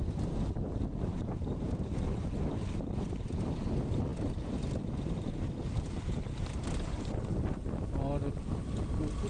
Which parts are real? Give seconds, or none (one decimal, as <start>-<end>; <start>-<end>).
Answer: 0.0-1.1; 2.5-6.3; 7.1-9.3